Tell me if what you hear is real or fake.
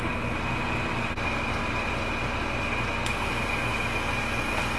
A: real